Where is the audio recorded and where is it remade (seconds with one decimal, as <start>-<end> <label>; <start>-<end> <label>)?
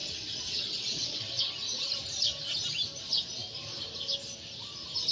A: 0.0-1.4 remade; 1.4-5.1 recorded